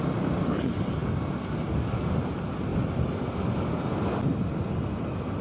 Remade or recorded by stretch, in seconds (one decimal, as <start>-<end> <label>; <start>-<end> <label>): 0.0-5.4 recorded